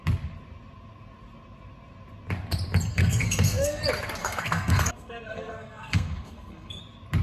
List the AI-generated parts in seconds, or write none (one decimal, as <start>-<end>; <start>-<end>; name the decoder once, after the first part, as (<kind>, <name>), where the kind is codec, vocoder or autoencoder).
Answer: 2.9-3.8 (codec, SNAC); 4.2-6.8